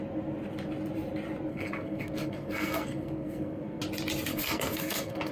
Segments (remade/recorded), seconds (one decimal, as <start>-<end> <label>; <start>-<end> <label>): 0.0-1.5 recorded; 1.5-3.8 remade; 3.8-4.3 recorded; 4.3-5.3 remade